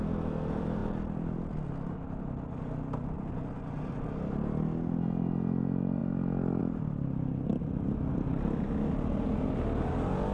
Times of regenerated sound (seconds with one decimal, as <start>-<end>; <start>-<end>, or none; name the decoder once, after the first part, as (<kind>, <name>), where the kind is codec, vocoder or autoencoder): 7.5-8.0 (vocoder, BigVGAN v2)